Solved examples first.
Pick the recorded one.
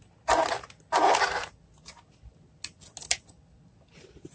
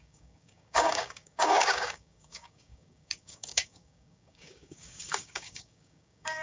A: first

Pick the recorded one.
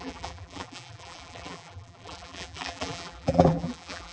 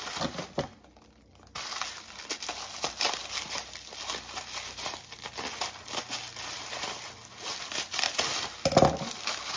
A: second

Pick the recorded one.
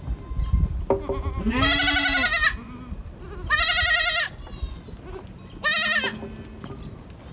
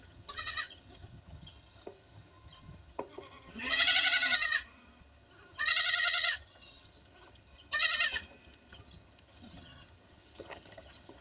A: first